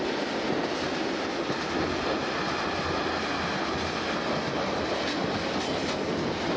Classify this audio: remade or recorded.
recorded